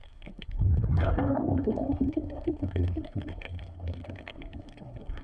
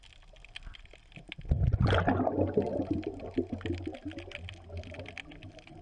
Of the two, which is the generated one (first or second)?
first